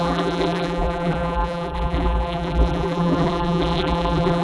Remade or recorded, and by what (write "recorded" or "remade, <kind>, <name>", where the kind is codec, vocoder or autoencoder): remade, vocoder, BigVGAN v2